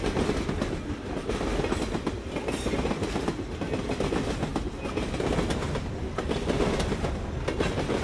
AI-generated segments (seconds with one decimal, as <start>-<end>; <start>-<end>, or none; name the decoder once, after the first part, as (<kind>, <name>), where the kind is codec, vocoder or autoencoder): none